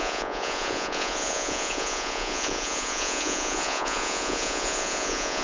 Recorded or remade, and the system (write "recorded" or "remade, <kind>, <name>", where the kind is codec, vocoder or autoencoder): remade, vocoder, Vocos